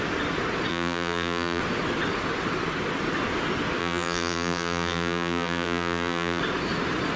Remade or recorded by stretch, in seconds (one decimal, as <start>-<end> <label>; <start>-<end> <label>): 0.0-0.7 recorded; 0.7-1.6 remade; 1.6-3.8 recorded; 3.8-6.4 remade; 6.4-7.2 recorded